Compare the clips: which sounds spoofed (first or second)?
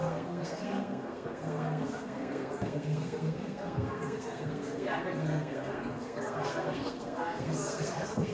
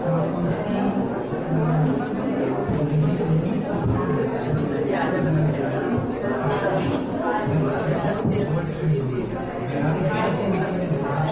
first